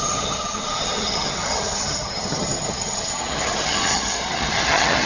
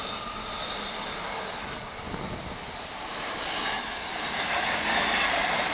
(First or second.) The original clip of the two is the second